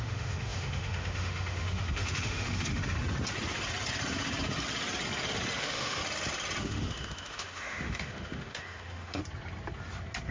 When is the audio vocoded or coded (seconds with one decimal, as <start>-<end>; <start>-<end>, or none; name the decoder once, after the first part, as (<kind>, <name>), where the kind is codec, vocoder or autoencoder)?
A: 0.0-2.8 (autoencoder, DAC-VAE); 5.6-6.0; 6.6-9.2